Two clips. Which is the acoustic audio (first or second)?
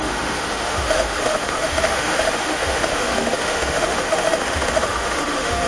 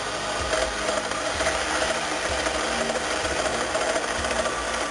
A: second